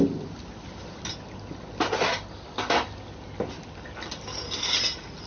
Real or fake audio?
real